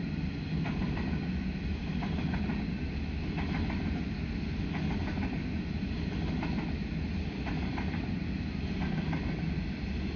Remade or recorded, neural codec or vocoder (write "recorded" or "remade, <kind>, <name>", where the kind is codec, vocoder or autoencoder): recorded